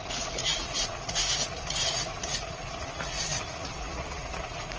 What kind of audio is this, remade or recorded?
remade